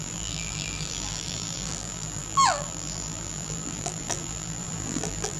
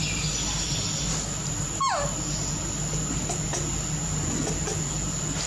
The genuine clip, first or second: second